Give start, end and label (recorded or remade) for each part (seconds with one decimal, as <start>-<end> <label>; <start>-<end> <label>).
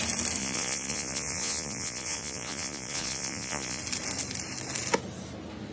0.0-0.4 recorded; 0.4-3.8 remade; 3.8-5.7 recorded